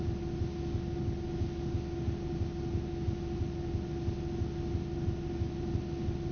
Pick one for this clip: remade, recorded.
recorded